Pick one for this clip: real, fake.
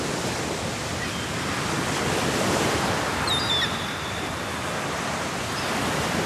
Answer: real